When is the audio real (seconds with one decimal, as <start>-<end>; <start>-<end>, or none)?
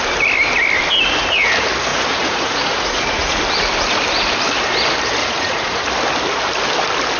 0.0-1.9; 3.3-5.2; 5.9-7.2